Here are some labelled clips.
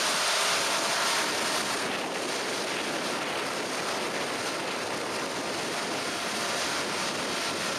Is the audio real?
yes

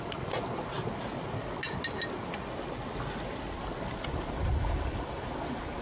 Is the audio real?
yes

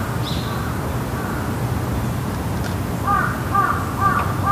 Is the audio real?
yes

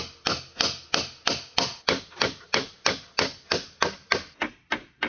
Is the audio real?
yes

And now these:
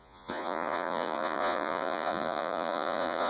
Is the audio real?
no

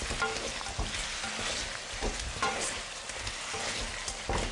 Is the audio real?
yes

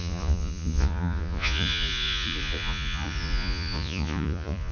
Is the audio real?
no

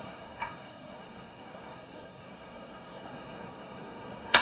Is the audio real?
no